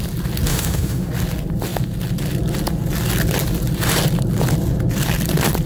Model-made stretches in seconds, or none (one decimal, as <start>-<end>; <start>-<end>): 0.5-1.1